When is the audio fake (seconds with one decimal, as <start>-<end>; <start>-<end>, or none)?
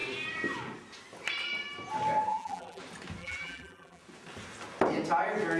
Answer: 2.3-2.8; 3.2-4.0